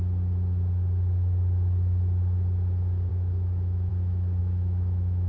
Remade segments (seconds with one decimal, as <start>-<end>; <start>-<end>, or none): 3.1-3.9; 4.4-5.3